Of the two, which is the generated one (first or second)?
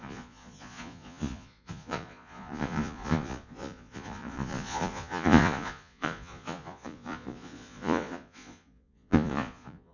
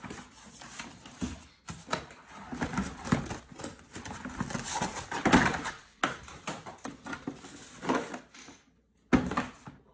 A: first